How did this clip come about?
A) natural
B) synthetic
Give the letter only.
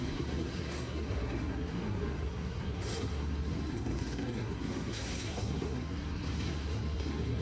B